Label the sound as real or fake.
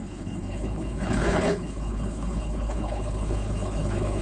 fake